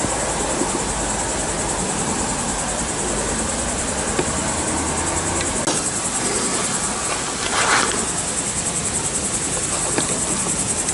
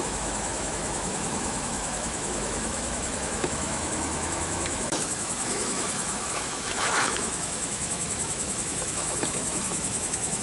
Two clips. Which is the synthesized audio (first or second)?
second